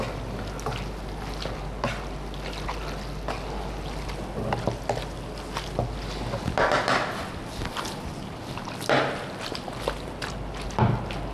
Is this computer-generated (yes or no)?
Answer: no